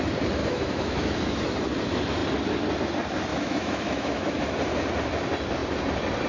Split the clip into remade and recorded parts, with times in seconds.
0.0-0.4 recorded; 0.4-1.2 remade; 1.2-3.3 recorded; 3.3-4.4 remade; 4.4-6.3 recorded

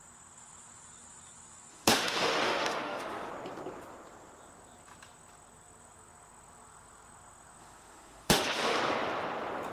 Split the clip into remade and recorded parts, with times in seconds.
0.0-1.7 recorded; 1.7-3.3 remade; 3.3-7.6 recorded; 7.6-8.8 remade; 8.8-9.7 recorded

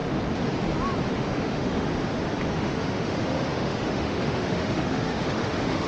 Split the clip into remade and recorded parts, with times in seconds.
0.0-1.1 recorded; 1.1-1.9 remade; 1.9-2.5 recorded; 2.5-5.9 remade

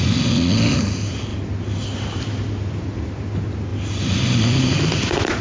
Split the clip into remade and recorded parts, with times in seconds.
0.0-5.4 recorded